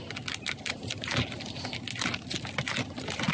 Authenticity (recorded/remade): recorded